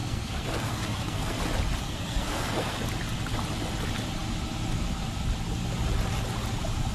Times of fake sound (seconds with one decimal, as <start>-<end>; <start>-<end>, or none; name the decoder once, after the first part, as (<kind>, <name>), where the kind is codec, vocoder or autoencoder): 0.0-1.4 (codec, SNAC); 1.8-2.8